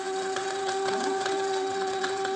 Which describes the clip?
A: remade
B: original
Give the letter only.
A